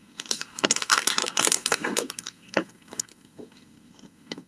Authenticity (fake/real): fake